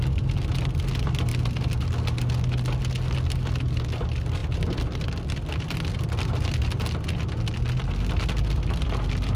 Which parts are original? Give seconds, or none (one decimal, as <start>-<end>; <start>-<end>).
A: 0.0-9.4